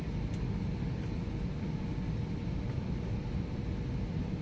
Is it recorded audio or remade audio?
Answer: recorded